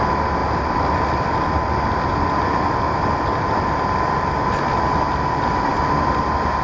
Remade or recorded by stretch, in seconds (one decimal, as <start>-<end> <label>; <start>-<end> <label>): 0.0-6.6 recorded